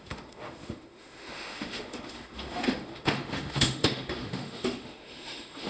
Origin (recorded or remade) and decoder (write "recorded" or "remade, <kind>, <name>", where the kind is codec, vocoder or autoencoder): remade, autoencoder, DAC-VAE